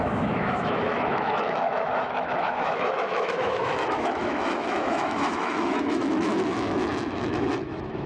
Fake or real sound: fake